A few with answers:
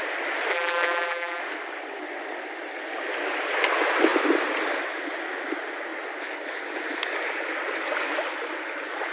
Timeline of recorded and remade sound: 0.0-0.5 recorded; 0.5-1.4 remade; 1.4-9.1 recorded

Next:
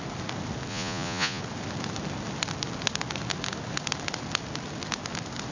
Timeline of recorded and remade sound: 0.0-0.7 recorded; 0.7-1.4 remade; 1.4-5.5 recorded

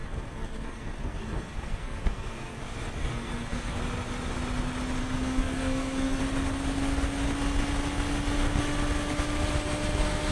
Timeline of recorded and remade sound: 0.0-2.6 remade; 2.6-3.0 recorded; 3.0-3.8 remade; 3.8-5.0 recorded; 5.0-6.2 remade; 6.2-10.3 recorded